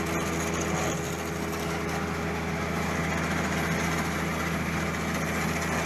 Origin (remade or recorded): recorded